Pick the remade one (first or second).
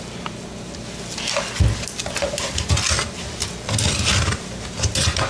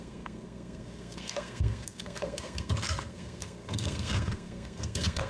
second